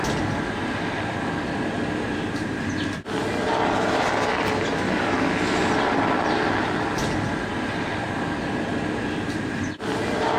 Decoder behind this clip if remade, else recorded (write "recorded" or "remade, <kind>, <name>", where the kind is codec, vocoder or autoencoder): recorded